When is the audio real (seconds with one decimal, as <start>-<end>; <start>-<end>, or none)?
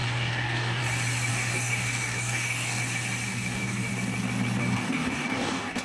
0.8-1.3; 2.8-3.3; 3.9-4.6